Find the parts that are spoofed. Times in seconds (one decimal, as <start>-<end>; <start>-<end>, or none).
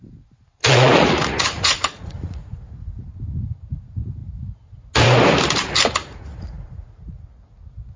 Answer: 0.6-3.1; 6.0-7.1